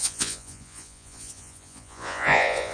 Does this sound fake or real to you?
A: fake